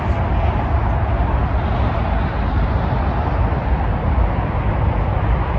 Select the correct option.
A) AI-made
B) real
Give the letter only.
B